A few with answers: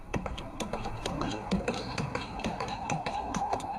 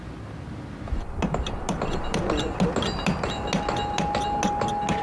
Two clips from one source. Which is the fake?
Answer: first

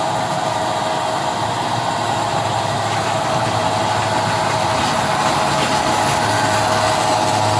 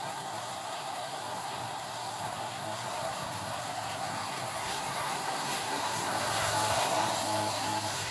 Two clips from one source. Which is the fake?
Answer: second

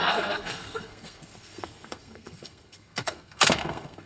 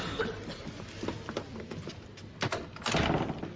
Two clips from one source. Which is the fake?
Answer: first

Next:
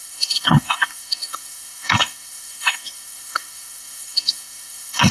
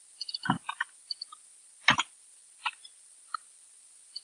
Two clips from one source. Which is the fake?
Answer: first